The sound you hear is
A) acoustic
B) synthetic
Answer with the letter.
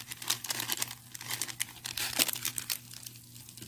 B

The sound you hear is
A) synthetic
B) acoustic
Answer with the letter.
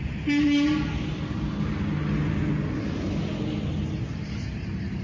B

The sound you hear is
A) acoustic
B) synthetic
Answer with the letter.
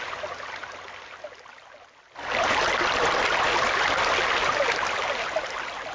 A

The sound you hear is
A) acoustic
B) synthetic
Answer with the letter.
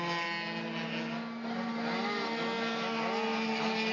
A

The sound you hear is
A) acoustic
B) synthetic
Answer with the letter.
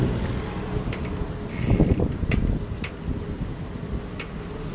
A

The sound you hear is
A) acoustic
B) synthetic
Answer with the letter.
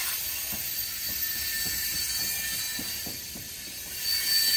A